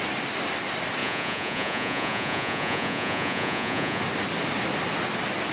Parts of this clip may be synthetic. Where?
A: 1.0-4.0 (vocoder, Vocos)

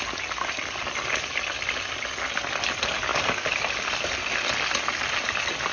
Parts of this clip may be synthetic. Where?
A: none

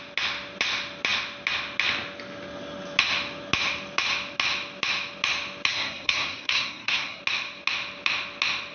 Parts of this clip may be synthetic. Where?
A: 5.7-7.2 (codec, SNAC)

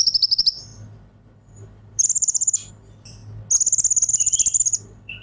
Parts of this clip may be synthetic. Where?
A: 0.0-3.2 (vocoder, BigVGAN v2); 4.1-5.2

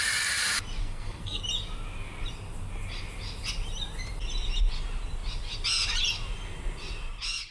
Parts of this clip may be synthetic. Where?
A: 0.8-1.4 (codec, SNAC)

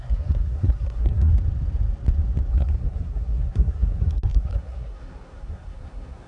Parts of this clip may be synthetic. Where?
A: 0.0-1.3 (codec, SNAC); 2.5-6.3